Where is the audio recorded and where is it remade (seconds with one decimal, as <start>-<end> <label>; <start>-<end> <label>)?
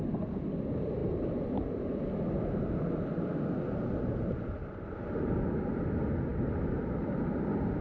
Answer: 0.0-7.8 recorded